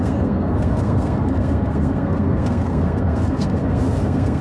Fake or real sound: fake